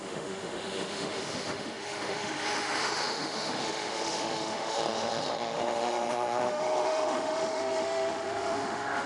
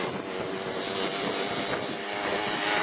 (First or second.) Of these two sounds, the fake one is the first